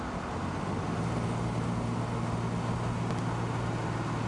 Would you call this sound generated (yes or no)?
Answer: no